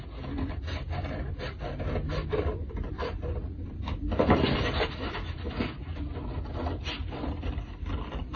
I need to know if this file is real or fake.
real